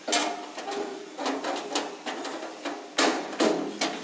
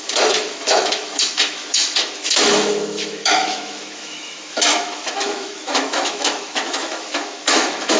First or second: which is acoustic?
first